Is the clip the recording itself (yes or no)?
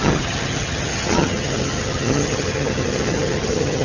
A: no